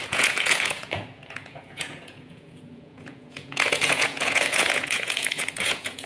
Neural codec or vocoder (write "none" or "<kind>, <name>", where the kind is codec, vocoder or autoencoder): vocoder, Vocos